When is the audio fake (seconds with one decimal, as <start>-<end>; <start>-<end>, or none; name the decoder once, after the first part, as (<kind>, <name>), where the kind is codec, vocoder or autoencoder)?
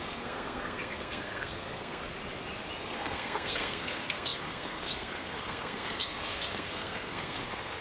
0.0-2.0 (codec, SNAC); 2.8-7.8